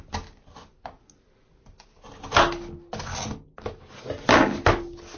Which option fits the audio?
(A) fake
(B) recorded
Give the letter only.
B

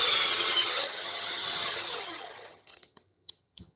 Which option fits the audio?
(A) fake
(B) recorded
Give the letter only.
A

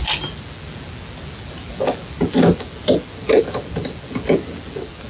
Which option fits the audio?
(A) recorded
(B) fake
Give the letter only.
A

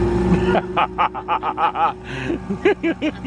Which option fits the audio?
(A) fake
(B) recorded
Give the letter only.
B